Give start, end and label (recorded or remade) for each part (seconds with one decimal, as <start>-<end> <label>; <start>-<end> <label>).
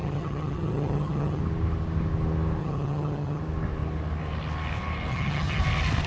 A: 0.0-1.4 remade; 1.4-2.6 recorded; 2.6-3.4 remade; 3.4-5.1 recorded; 5.1-5.6 remade; 5.6-6.1 recorded